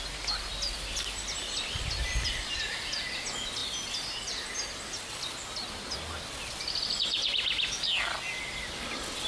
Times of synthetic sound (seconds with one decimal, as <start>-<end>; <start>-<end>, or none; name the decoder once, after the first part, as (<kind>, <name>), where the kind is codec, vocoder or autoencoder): none